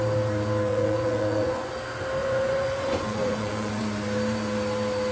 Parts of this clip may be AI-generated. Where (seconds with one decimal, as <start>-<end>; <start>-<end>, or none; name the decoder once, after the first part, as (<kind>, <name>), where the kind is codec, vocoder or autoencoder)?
0.7-1.7 (vocoder, Vocos); 2.2-3.8